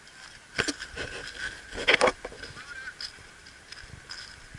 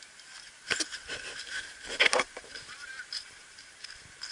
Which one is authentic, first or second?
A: first